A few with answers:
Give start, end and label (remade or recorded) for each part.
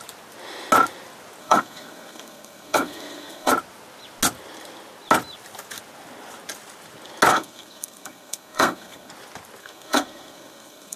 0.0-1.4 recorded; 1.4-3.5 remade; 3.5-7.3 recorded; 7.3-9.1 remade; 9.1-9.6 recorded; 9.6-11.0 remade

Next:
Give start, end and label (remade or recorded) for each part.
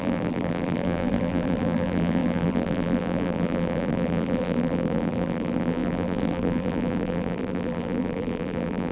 0.0-8.9 remade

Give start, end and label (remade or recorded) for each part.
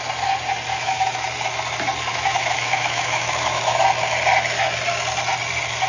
0.0-0.7 recorded; 0.7-1.3 remade; 1.3-2.1 recorded; 2.1-3.8 remade; 3.8-5.9 recorded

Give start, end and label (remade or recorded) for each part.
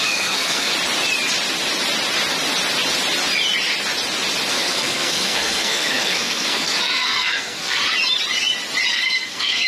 0.0-0.7 remade; 0.7-4.5 recorded; 4.5-7.8 remade; 7.8-8.9 recorded; 8.9-9.7 remade